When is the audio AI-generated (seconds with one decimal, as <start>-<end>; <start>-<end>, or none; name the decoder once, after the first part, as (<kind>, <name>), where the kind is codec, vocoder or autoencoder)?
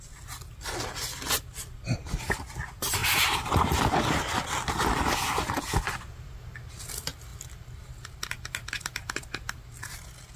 3.0-3.5 (vocoder, BigVGAN v2)